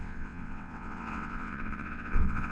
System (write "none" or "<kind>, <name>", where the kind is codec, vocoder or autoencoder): vocoder, WaveNeXt